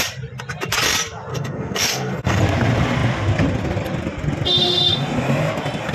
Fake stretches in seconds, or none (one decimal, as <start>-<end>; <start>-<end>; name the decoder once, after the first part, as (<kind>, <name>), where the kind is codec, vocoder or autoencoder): 1.3-2.4 (codec, SNAC)